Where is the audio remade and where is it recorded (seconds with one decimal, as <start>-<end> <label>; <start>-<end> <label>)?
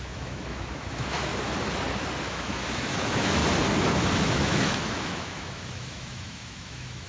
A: 0.0-1.3 remade; 1.3-2.2 recorded; 2.2-3.4 remade; 3.4-4.1 recorded; 4.1-7.1 remade